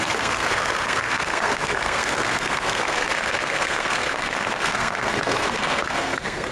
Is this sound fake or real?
fake